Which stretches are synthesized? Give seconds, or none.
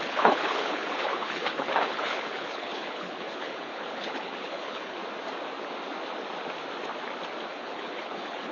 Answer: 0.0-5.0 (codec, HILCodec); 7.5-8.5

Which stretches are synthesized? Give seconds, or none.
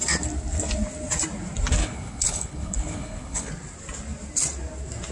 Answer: 1.8-3.5 (codec, HILCodec)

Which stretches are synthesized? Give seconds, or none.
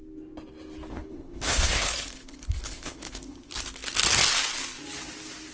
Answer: 0.9-3.5 (codec, HILCodec)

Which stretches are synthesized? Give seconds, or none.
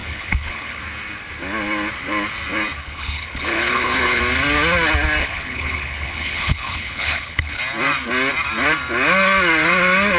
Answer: 0.0-0.8 (codec, HILCodec); 2.8-4.2; 5.2-7.6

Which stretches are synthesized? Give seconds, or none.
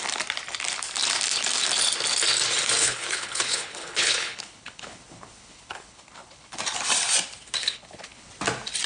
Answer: 2.8-6.6 (codec, HILCodec); 7.6-8.3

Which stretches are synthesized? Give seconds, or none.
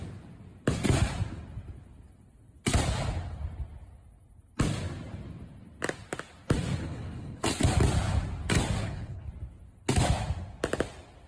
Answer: 6.8-7.4 (codec, HILCodec); 8.8-9.3